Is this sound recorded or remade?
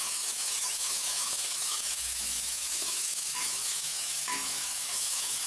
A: remade